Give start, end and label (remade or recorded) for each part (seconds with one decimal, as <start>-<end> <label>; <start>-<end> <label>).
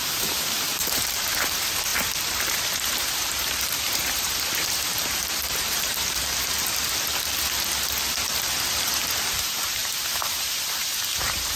0.0-6.2 remade; 6.2-8.7 recorded; 8.7-11.6 remade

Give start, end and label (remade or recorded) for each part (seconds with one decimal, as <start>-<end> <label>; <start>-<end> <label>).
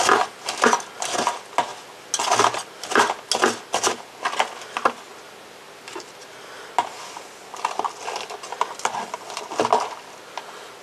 0.0-10.8 recorded